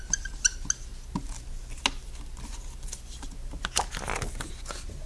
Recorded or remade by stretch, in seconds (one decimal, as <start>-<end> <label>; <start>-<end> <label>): 0.0-5.1 recorded